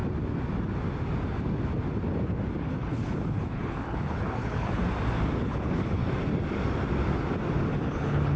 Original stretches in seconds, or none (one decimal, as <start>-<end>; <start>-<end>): 0.0-2.6; 4.8-5.4; 6.0-7.7